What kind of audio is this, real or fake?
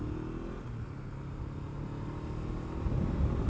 real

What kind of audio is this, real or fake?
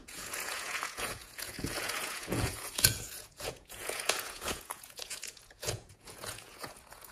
fake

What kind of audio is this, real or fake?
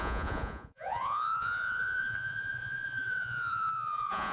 fake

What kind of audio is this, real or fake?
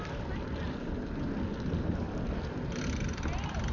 real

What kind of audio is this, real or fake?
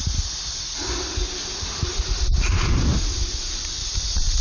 real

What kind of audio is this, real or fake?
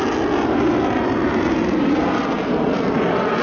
real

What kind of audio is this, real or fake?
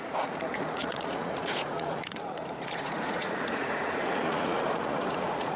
fake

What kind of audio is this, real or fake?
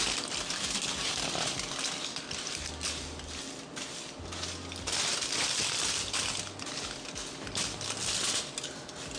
real